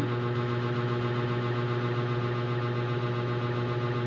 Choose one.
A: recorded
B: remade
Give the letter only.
A